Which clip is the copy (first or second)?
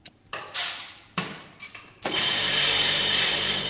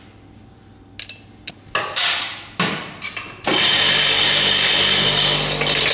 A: first